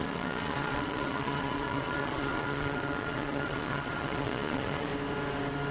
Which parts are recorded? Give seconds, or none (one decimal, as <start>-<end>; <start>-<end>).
4.9-5.7